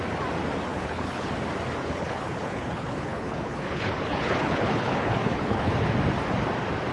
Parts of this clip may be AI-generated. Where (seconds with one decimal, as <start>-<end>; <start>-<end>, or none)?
0.7-1.3; 1.8-5.9